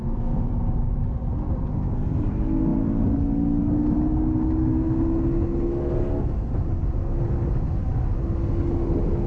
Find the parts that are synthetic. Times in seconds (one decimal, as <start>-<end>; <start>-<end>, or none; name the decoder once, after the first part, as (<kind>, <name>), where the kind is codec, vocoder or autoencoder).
none